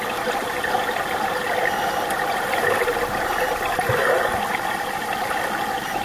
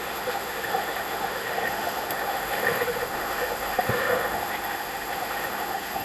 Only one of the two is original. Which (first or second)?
first